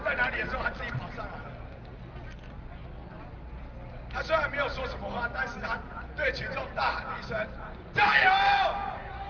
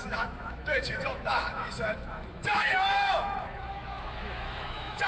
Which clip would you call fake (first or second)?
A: second